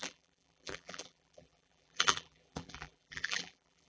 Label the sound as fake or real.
fake